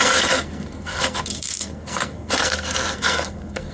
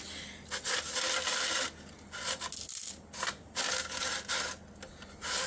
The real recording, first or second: second